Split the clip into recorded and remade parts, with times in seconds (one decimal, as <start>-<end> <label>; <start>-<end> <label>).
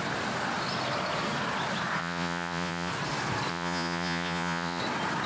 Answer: 0.0-2.0 recorded; 2.0-2.9 remade; 2.9-3.5 recorded; 3.5-4.8 remade; 4.8-5.3 recorded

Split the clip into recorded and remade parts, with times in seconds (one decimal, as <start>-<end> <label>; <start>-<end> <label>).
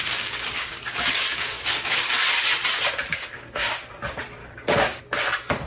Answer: 0.0-2.1 remade; 2.1-3.1 recorded; 3.1-3.9 remade; 3.9-4.4 recorded; 4.4-5.0 remade; 5.0-5.7 recorded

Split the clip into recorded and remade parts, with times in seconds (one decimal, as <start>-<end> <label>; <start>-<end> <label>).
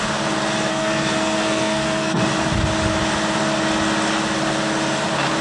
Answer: 0.0-0.7 recorded; 0.7-2.2 remade; 2.2-5.4 recorded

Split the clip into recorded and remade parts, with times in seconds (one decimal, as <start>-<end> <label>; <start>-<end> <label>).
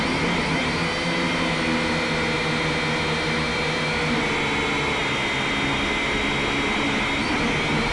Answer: 0.0-7.9 recorded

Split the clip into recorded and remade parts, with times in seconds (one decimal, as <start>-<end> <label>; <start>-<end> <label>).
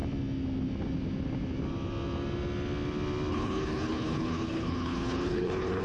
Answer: 0.0-3.3 recorded; 3.3-5.8 remade